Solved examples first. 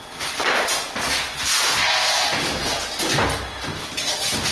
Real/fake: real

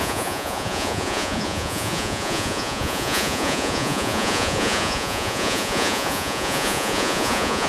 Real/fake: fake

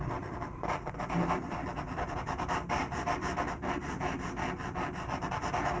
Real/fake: real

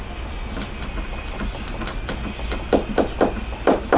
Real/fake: real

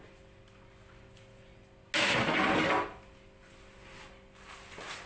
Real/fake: real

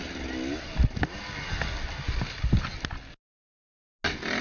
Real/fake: real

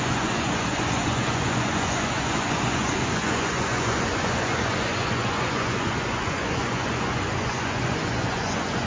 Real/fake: fake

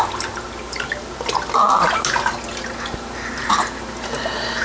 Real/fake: real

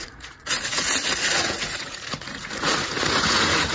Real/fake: fake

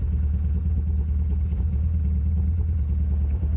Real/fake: fake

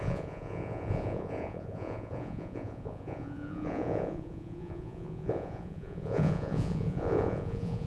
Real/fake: fake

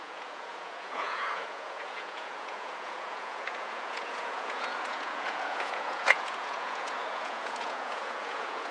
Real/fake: fake